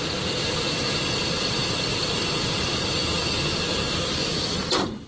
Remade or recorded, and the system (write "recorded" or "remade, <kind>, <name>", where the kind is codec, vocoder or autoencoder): recorded